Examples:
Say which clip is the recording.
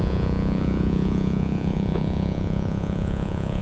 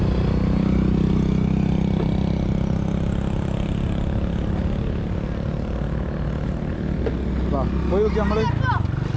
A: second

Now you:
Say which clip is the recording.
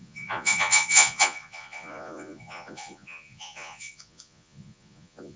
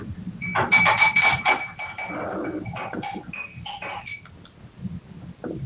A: second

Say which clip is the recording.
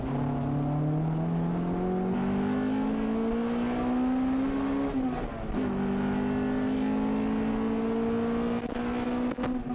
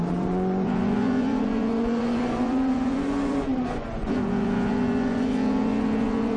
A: first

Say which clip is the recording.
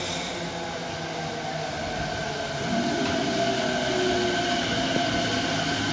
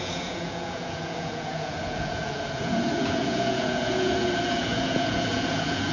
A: first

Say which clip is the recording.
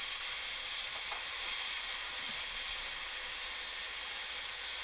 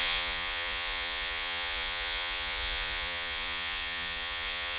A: first